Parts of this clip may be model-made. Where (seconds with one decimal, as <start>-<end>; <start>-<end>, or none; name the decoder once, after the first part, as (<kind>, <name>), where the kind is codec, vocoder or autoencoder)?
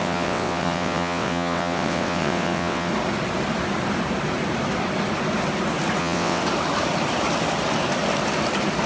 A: 0.0-2.9 (vocoder, WaveNeXt); 6.0-6.4